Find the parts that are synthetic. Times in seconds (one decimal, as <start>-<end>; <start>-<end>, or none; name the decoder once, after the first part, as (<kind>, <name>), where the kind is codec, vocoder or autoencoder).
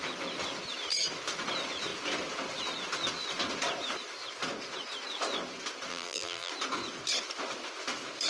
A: 5.9-6.5 (vocoder, BigVGAN v2)